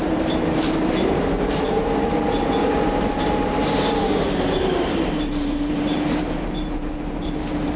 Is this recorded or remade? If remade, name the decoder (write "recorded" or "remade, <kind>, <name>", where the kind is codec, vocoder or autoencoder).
remade, vocoder, BigVGAN v2